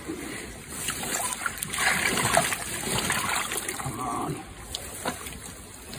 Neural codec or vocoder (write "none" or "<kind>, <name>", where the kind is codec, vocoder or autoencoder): none